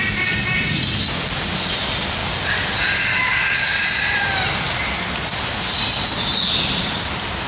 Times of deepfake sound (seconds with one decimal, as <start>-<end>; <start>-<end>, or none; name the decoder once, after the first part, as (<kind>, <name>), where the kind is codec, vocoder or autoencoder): none